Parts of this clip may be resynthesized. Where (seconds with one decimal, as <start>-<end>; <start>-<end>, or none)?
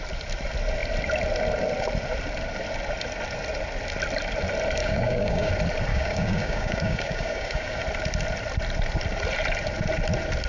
4.8-5.5; 5.9-7.8